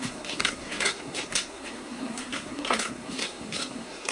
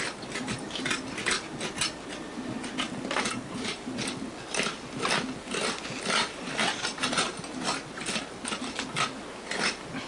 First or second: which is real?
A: second